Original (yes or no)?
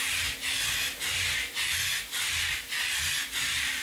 yes